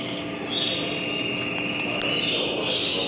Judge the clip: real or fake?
real